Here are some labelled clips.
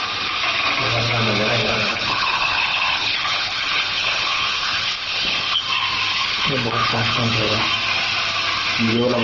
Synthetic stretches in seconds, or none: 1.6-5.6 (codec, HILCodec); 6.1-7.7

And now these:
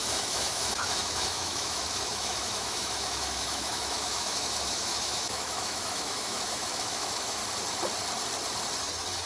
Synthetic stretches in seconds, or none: 0.0-7.4 (autoencoder, DAC-VAE)

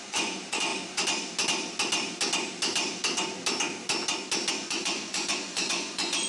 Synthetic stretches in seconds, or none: 0.0-0.7 (vocoder, Vocos); 4.5-6.3